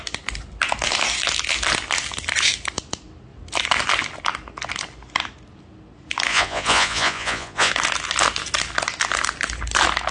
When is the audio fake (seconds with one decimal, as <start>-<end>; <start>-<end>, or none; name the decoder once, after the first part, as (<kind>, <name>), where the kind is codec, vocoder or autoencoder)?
6.3-7.7 (vocoder, Vocos)